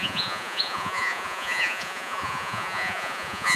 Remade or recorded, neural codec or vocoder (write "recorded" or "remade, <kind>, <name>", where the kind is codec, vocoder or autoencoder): remade, vocoder, Vocos